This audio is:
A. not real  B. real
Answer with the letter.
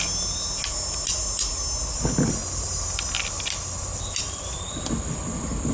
B